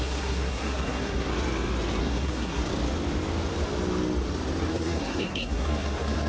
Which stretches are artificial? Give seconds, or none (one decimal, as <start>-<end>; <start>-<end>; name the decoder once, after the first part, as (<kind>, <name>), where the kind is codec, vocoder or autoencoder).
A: 0.0-1.3 (codec, SNAC); 2.0-2.6; 4.7-6.3